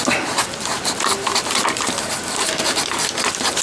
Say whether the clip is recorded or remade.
recorded